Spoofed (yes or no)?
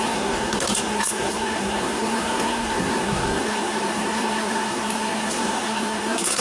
yes